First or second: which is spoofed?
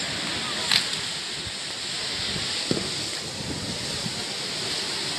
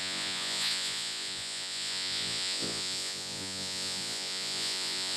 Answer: second